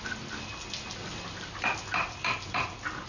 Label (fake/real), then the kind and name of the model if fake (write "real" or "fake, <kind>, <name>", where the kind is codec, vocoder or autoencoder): real